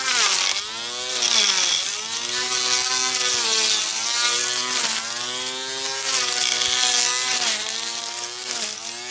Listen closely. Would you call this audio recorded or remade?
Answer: recorded